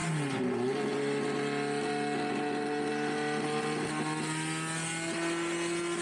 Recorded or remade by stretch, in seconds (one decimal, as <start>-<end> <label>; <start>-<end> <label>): 0.0-6.0 recorded